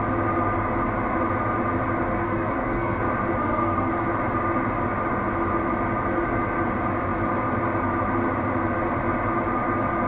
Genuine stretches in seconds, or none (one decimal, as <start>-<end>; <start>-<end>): 0.0-2.2; 3.0-3.4; 3.9-10.1